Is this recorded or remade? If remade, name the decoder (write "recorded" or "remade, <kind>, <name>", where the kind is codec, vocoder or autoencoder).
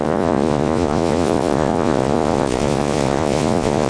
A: remade, vocoder, Vocos